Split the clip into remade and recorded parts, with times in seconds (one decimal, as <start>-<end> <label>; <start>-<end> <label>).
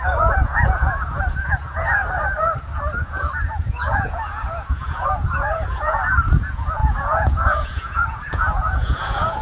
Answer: 0.0-2.0 remade; 2.0-3.0 recorded; 3.0-9.4 remade